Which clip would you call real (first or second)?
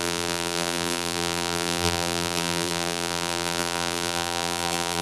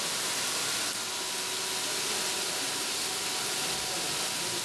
second